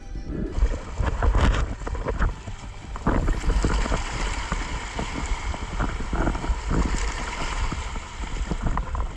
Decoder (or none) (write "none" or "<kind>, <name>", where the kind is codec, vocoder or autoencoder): vocoder, BigVGAN v2